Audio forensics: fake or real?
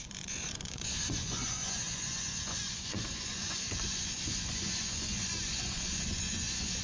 fake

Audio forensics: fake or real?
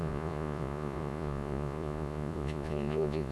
fake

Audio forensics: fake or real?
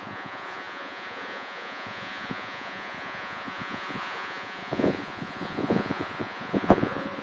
fake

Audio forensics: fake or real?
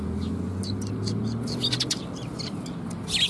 real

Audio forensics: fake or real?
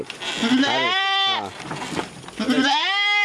real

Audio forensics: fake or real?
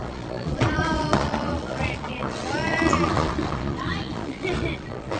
fake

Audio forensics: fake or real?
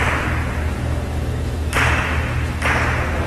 real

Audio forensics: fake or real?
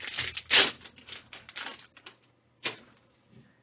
real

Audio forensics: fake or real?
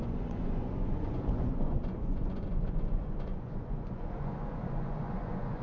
fake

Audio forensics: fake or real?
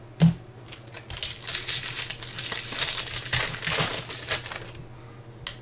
real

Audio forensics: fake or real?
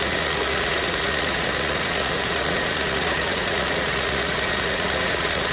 fake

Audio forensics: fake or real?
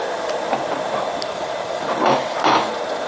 real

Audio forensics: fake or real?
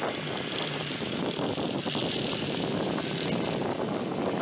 real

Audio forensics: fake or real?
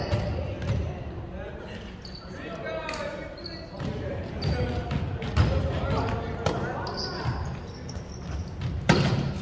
real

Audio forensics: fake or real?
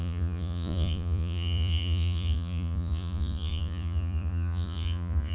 fake